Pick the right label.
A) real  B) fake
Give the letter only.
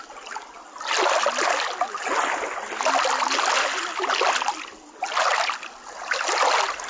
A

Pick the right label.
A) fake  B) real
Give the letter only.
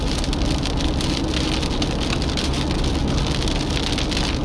B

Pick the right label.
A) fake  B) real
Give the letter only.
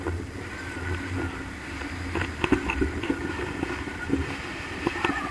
A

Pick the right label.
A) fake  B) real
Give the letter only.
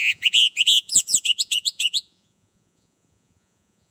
A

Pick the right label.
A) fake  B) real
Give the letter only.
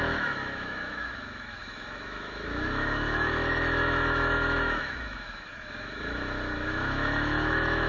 A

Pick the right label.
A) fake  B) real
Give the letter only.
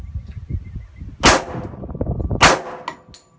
B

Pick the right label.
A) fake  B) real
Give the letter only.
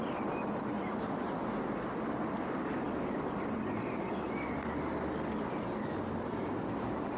B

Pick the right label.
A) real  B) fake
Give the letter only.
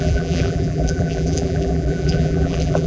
B